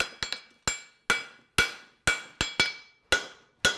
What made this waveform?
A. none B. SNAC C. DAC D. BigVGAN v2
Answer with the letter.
A